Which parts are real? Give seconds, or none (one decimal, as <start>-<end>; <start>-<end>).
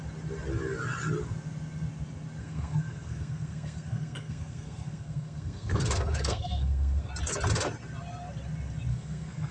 0.0-2.4; 7.1-8.9